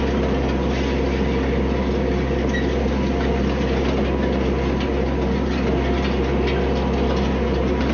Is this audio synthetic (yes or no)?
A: no